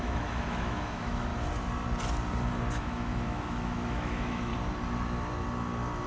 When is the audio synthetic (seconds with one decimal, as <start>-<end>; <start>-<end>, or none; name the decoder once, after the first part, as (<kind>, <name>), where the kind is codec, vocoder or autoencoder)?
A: 0.0-1.3 (autoencoder, DAC-VAE); 2.8-4.5